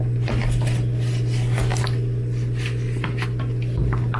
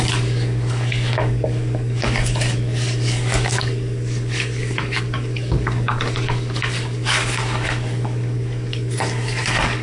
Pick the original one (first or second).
first